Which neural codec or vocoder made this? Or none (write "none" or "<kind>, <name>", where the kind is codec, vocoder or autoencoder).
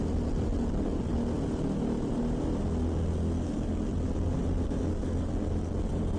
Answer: none